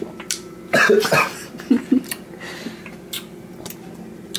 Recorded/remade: recorded